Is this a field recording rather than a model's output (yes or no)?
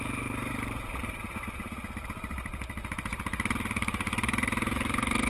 no